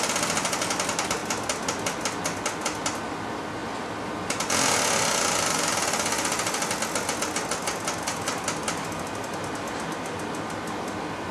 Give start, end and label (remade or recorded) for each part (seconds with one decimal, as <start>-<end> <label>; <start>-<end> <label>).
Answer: 0.0-11.3 recorded